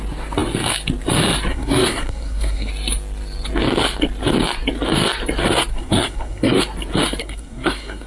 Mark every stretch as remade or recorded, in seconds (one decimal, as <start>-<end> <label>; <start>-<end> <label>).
0.0-1.5 recorded; 1.5-2.7 remade; 2.7-5.7 recorded; 5.7-6.6 remade; 6.6-7.2 recorded; 7.2-8.1 remade